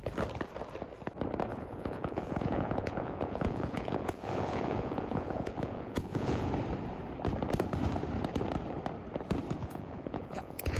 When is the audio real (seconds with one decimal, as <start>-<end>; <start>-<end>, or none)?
0.0-1.5; 6.5-9.6